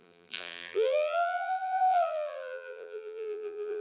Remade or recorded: remade